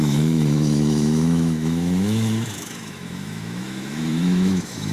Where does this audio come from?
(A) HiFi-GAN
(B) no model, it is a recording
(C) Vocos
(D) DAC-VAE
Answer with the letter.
D